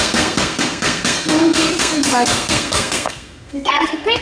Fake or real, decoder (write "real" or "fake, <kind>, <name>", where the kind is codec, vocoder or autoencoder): fake, codec, SNAC